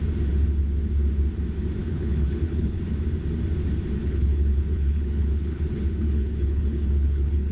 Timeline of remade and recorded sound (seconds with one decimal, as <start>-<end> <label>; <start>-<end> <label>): 0.0-1.8 recorded; 1.8-2.8 remade; 2.8-4.0 recorded; 4.0-7.5 remade